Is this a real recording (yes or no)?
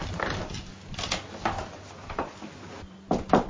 yes